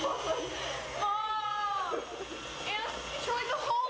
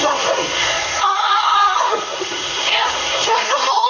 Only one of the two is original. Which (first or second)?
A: first